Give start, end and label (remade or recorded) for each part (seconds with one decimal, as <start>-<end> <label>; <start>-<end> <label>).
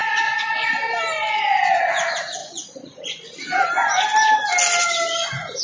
0.0-2.4 recorded; 2.4-3.2 remade; 3.2-5.6 recorded